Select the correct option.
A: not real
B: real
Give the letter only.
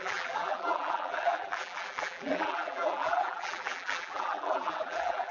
A